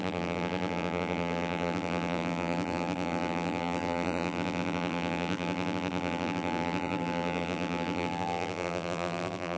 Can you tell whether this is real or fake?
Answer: fake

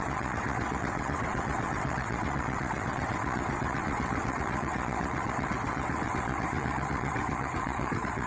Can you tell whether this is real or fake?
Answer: fake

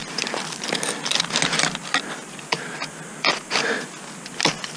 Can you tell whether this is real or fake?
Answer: real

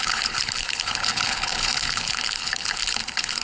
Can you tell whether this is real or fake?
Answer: fake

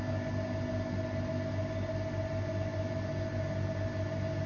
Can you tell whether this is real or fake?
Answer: real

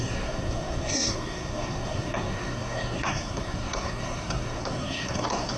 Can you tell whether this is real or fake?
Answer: fake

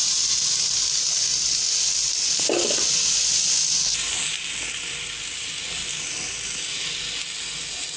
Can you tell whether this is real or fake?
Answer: real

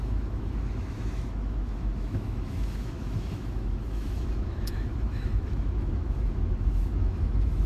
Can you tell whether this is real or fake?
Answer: fake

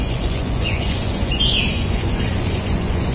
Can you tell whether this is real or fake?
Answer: fake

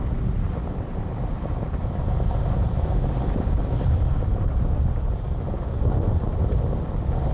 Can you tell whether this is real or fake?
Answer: real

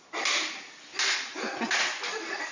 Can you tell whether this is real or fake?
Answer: real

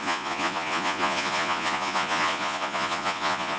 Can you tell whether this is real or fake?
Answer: fake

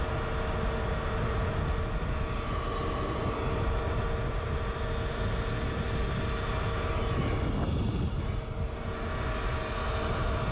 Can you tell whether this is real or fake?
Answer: real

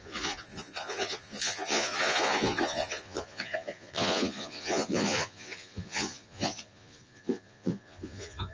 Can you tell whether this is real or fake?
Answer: fake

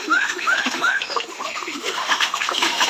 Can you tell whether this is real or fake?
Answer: fake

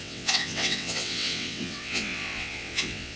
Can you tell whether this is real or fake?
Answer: fake